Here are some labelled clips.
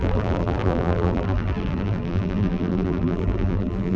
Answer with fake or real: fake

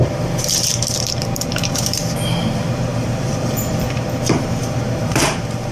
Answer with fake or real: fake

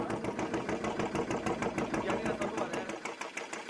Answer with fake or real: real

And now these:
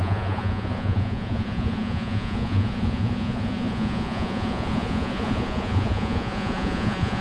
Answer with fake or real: fake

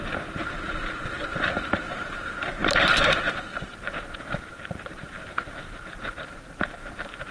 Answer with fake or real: fake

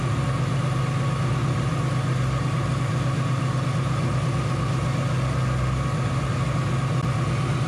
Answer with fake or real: real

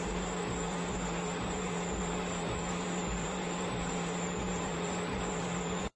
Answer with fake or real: fake